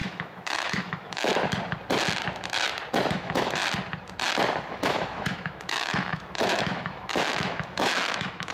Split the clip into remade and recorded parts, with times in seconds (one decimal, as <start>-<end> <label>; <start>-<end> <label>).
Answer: 0.0-1.3 remade; 1.3-3.1 recorded; 3.1-3.6 remade; 3.6-4.7 recorded; 4.7-8.5 remade